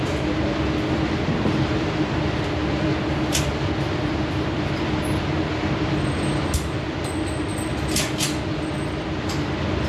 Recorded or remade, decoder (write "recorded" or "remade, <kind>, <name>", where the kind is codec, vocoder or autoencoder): recorded